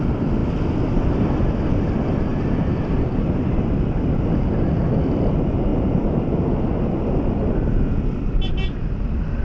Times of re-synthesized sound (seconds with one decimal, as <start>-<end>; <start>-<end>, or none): none